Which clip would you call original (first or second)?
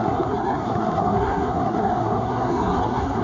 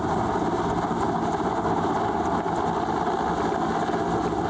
second